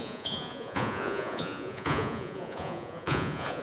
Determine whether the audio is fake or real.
fake